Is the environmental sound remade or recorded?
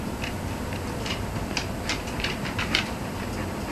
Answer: recorded